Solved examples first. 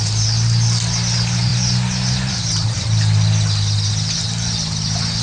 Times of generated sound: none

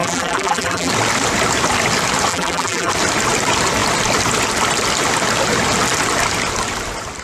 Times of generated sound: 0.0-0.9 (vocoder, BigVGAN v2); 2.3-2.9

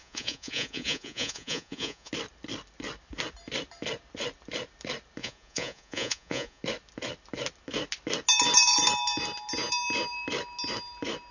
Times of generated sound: 0.0-2.1 (vocoder, Vocos); 5.2-6.6